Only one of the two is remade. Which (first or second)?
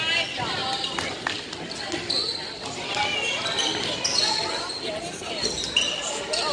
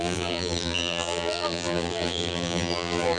second